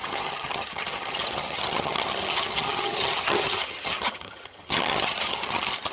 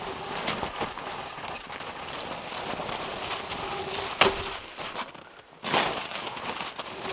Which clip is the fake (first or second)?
first